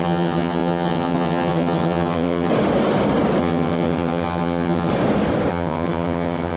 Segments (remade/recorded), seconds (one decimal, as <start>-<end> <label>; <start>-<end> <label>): 0.0-2.5 remade; 2.5-3.4 recorded; 3.4-4.9 remade; 4.9-5.5 recorded; 5.5-6.6 remade